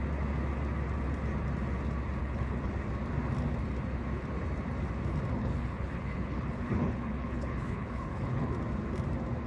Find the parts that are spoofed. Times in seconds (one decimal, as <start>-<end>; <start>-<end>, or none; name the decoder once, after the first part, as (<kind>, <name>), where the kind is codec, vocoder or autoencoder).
2.2-2.7 (codec, HILCodec); 5.4-8.5